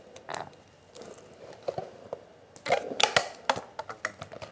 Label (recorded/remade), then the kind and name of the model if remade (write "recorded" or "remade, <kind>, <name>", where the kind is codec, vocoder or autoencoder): recorded